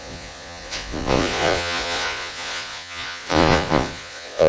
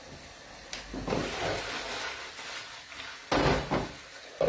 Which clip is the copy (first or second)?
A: first